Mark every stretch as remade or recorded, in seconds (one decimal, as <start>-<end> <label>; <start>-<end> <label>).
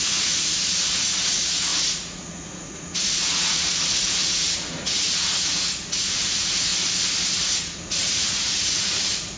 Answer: 0.0-6.7 remade; 6.7-7.4 recorded; 7.4-9.4 remade